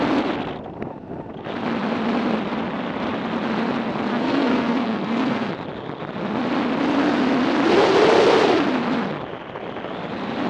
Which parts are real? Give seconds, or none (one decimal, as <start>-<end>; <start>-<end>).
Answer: 0.0-4.1; 5.5-10.5